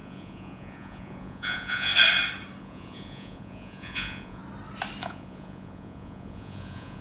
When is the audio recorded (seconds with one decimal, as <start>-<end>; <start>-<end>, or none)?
1.9-2.6; 4.4-5.0